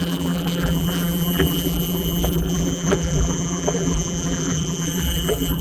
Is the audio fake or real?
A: fake